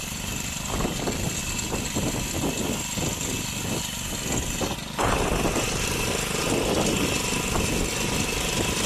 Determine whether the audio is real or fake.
real